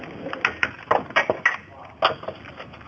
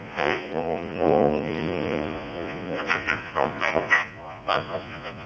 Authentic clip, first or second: first